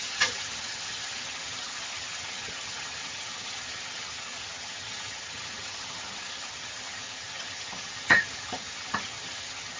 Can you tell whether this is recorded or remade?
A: remade